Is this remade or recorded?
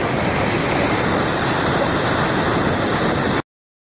recorded